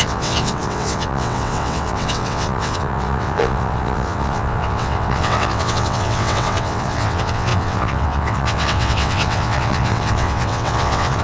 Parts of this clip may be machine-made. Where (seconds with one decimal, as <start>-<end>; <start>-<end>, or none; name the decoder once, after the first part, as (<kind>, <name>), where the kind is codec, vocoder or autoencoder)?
0.0-11.2 (vocoder, WaveNeXt)